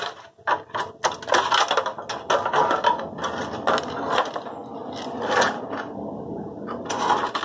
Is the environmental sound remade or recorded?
recorded